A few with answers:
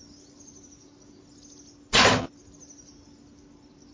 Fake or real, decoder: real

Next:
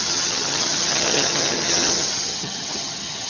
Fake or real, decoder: fake, vocoder, HiFi-GAN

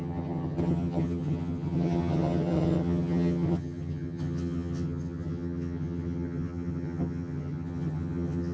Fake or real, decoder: fake, vocoder, HiFi-GAN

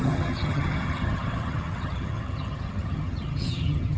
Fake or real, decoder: fake, vocoder, HiFi-GAN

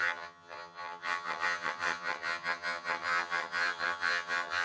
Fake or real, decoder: fake, vocoder, HiFi-GAN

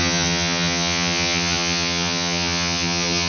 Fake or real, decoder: fake, vocoder, HiFi-GAN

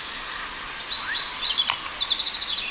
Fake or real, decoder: real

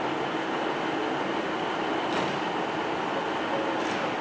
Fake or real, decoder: real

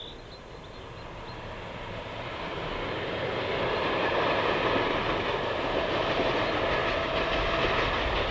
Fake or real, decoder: real